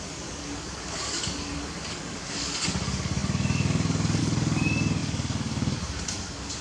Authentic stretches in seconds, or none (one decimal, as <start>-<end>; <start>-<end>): none